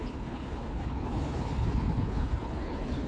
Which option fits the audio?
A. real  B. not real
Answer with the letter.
B